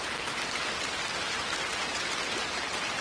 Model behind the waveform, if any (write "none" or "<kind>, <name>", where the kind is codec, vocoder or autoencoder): none